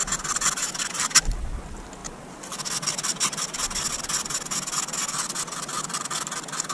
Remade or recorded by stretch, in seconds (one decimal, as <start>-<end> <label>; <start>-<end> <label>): 0.0-6.7 recorded